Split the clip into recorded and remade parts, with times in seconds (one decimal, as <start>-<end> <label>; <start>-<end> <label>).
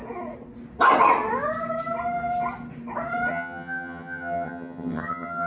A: 0.0-3.3 recorded; 3.3-5.5 remade